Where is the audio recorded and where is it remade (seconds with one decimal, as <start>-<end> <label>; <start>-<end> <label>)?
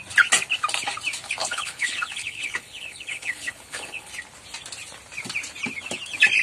0.0-1.4 recorded; 1.4-4.1 remade; 4.1-6.4 recorded